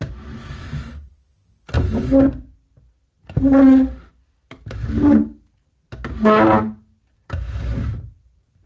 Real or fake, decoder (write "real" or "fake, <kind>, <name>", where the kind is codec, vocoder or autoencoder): real